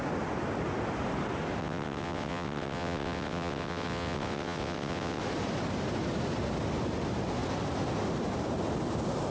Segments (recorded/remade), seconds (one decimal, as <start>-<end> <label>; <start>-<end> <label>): 0.0-1.6 recorded; 1.6-5.2 remade; 5.2-9.3 recorded